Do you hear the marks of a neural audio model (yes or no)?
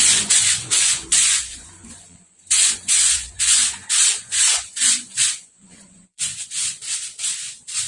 yes